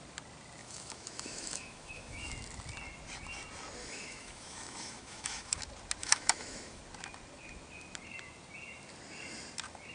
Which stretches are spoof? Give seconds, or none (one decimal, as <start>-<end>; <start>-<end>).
0.6-2.3; 3.8-5.6; 6.0-6.8